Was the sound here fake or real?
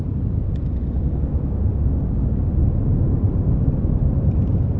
real